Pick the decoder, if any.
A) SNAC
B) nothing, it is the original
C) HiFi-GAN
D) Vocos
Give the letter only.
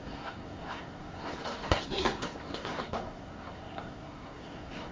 A